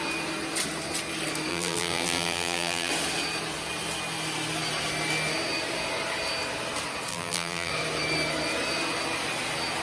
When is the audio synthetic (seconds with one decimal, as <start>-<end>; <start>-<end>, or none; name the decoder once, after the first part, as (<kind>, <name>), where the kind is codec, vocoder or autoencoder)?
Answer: 1.5-2.9 (vocoder, BigVGAN v2); 7.1-7.7